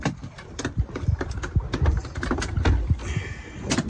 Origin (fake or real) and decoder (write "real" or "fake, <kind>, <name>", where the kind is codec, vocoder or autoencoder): real